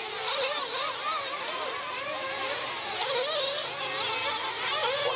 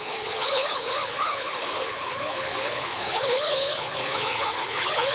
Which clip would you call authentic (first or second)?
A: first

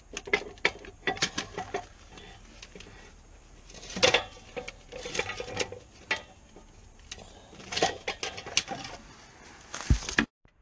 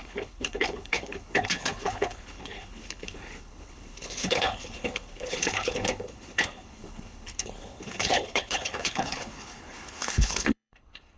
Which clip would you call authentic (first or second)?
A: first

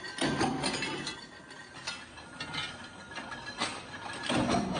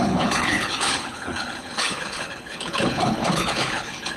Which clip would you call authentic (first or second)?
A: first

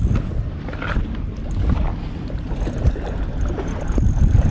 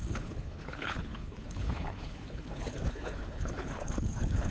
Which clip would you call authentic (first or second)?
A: first